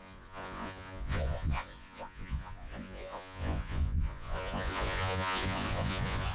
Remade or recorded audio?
remade